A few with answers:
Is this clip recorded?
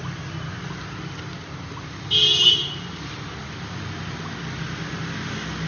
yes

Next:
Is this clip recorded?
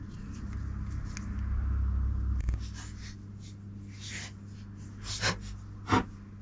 yes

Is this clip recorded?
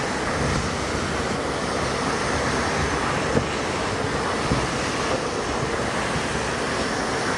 yes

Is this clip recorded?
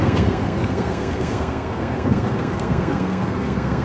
no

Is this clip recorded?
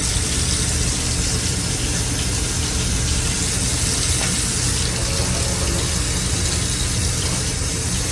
yes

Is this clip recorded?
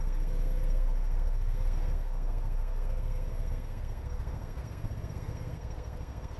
no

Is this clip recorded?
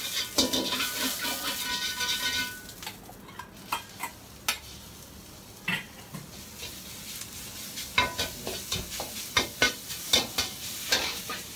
yes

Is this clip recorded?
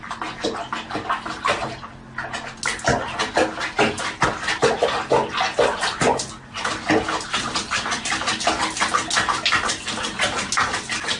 yes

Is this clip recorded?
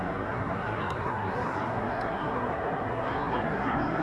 no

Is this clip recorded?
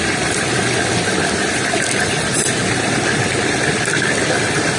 yes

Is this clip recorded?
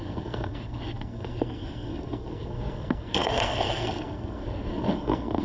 no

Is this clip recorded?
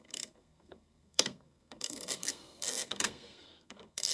no